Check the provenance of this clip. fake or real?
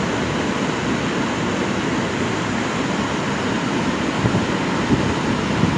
real